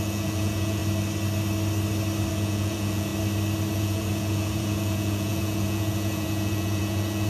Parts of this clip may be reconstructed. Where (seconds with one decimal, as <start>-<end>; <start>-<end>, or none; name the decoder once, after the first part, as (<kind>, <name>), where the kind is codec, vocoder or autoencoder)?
0.0-0.8 (vocoder, Vocos); 2.3-3.1; 3.7-7.3